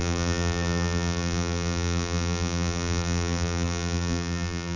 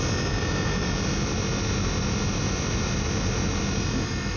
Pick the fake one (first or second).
first